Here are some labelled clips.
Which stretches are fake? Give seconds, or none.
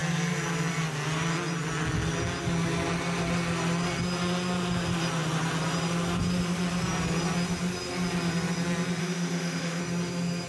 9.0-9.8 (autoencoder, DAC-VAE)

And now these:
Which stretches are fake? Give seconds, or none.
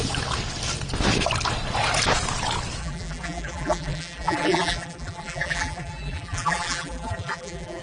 2.8-7.8 (vocoder, BigVGAN v2)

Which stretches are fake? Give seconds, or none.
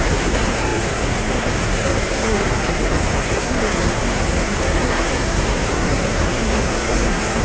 0.0-7.4 (codec, SNAC)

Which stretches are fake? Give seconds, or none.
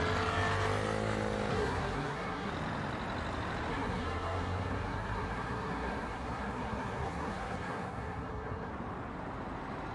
1.5-2.5 (codec, SNAC); 3.7-8.7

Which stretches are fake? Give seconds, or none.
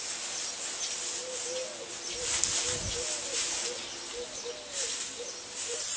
none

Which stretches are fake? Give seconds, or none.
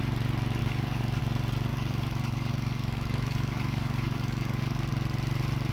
0.6-1.2 (codec, DAC); 1.7-4.9